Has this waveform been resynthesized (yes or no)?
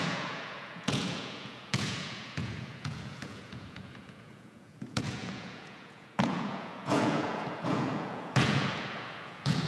yes